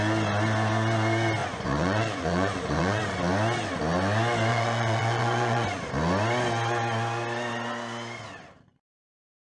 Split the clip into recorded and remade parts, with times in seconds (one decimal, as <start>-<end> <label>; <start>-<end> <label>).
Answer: 0.0-1.4 recorded; 1.4-3.0 remade; 3.0-4.5 recorded; 4.5-5.9 remade; 5.9-9.4 recorded